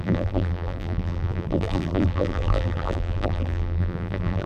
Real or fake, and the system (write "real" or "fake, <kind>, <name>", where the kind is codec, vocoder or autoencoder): fake, vocoder, BigVGAN v2